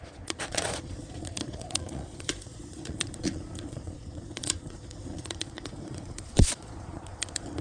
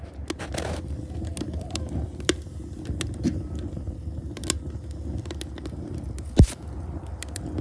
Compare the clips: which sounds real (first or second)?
second